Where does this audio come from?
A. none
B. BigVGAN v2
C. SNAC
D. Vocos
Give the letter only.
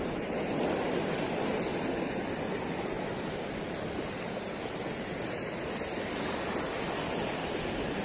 A